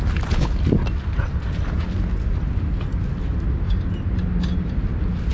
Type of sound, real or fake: real